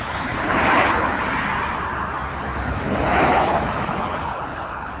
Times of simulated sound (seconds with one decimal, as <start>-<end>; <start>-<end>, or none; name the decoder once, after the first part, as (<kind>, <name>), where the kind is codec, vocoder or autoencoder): 0.0-1.2 (codec, HILCodec); 2.3-5.0